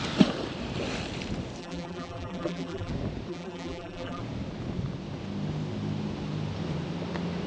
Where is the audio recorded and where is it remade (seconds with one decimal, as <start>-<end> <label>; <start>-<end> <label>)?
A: 0.0-1.6 recorded; 1.6-2.9 remade; 2.9-3.3 recorded; 3.3-4.2 remade; 4.2-7.5 recorded